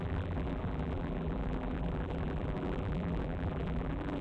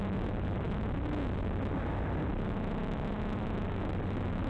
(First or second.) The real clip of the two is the second